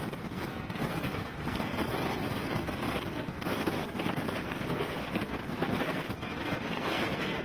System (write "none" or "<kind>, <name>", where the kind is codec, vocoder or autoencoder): codec, SNAC